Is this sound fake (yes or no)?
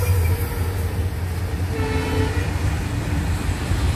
no